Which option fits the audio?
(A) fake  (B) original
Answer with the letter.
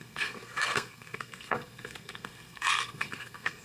A